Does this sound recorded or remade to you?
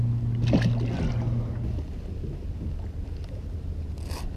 recorded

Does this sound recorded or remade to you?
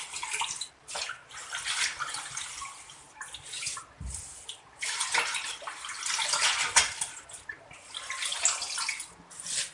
recorded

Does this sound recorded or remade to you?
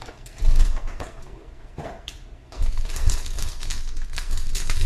remade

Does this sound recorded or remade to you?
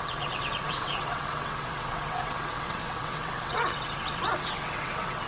remade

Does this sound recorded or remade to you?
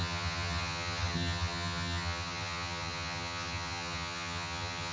remade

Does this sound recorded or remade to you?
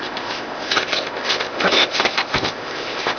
remade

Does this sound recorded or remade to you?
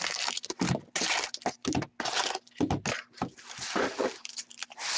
recorded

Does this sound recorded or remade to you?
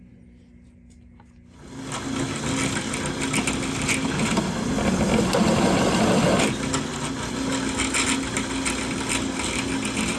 recorded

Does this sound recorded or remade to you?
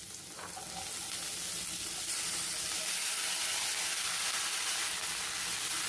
recorded